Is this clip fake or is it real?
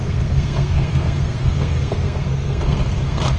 fake